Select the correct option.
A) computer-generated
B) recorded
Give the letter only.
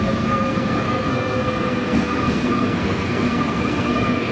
A